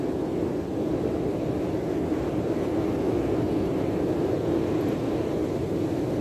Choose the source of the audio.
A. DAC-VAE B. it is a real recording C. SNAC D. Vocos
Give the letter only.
B